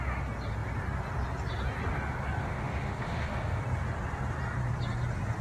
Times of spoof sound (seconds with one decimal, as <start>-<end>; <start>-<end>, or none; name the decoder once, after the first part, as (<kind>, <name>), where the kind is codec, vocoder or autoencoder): 2.4-3.6 (autoencoder, DAC-VAE)